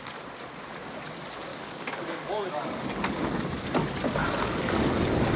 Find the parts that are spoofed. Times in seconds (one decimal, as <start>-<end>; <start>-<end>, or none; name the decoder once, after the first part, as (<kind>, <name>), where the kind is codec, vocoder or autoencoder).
1.5-3.2 (codec, DAC); 4.0-5.4